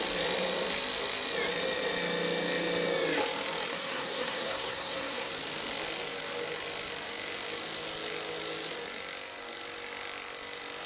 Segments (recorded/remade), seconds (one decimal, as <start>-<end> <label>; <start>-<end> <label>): 0.0-3.7 recorded; 3.7-5.3 remade; 5.3-10.9 recorded